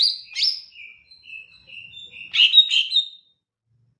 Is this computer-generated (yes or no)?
no